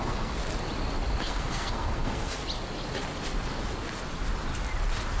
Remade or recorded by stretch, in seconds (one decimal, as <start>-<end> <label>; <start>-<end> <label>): 0.0-0.4 remade; 0.4-1.2 recorded; 1.2-2.4 remade; 2.4-5.2 recorded